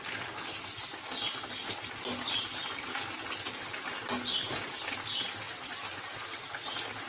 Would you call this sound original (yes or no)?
yes